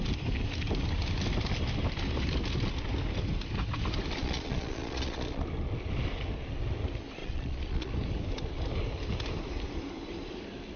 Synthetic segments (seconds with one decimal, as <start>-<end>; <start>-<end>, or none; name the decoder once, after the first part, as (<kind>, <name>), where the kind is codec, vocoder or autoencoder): 4.2-5.4 (vocoder, Vocos); 7.2-7.9